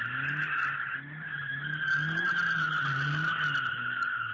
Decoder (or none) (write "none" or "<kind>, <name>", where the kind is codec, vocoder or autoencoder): none